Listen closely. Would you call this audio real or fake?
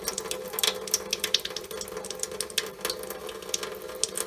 real